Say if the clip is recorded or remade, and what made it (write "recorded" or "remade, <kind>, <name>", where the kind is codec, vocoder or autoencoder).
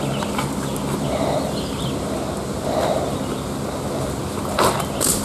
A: recorded